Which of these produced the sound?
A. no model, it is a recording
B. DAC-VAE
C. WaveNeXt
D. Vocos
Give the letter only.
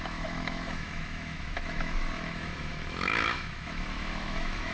B